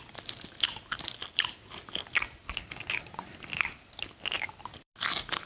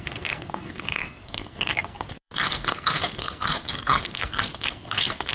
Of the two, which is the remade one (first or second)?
second